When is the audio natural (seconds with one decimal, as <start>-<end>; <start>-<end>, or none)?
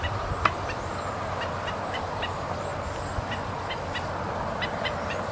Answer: 0.9-1.8; 2.7-4.5